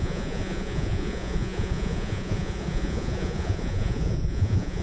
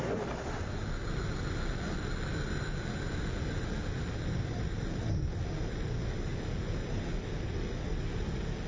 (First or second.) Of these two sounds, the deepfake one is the first